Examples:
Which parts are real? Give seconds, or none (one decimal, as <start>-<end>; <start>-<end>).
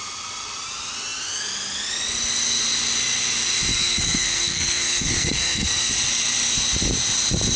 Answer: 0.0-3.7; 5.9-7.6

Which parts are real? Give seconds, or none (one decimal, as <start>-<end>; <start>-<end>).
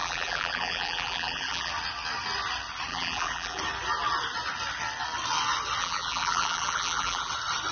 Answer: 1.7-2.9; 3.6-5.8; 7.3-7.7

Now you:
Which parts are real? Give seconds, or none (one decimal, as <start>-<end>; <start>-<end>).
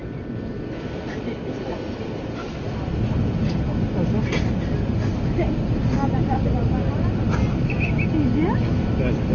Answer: 0.0-8.6